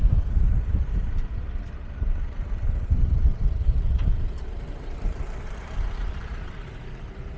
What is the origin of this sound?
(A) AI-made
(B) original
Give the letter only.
A